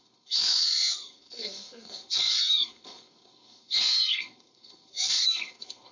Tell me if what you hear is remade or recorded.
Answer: remade